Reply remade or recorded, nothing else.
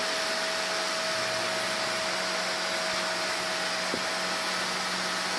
recorded